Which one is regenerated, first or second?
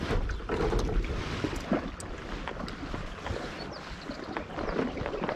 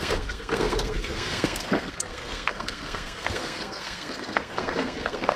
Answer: second